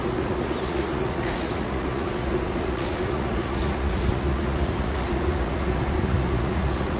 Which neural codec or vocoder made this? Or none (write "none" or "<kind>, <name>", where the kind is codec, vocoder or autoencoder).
vocoder, Vocos